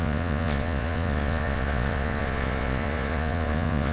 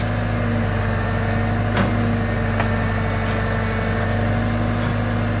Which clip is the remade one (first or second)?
first